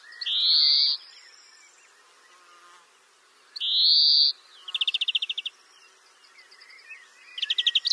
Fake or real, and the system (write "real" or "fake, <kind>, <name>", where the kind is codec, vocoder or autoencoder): real